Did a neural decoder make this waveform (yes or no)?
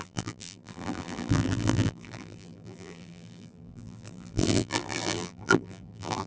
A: yes